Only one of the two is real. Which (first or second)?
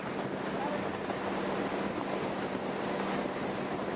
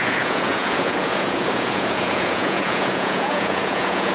first